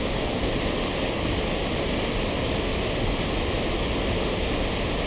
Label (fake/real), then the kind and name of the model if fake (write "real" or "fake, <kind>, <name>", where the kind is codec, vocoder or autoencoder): real